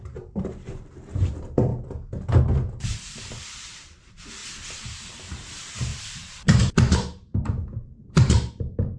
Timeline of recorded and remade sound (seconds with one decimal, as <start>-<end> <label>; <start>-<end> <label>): 0.0-1.7 remade; 1.7-2.7 recorded; 2.7-4.4 remade; 4.4-5.1 recorded; 5.1-9.0 remade